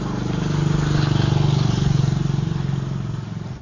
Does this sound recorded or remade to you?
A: recorded